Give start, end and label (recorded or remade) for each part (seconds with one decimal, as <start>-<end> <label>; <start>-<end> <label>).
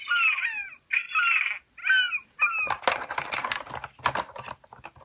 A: 0.0-5.0 recorded